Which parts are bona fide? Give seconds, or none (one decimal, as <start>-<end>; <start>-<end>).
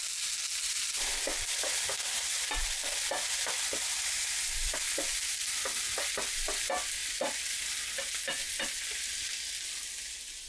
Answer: 0.0-10.5